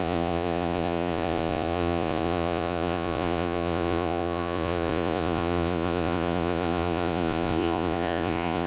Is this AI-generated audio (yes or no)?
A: yes